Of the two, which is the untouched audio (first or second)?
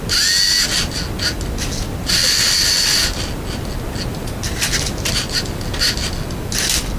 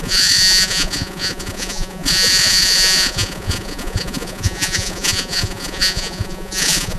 first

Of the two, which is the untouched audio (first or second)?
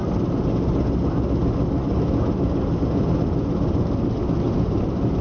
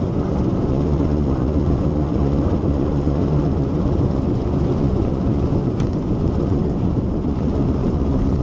first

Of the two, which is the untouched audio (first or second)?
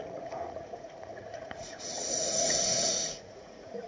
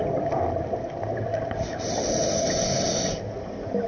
second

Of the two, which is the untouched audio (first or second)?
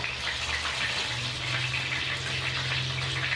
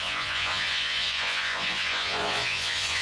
first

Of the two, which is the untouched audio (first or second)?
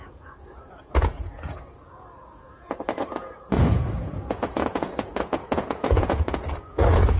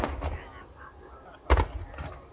second